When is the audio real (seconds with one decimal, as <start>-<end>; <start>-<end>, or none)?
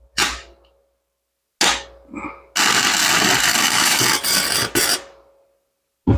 0.0-3.5; 4.0-6.2